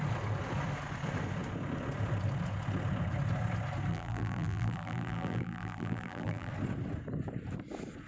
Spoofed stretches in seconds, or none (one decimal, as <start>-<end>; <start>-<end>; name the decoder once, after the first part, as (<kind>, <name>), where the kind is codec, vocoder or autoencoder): 3.9-6.5 (vocoder, BigVGAN v2)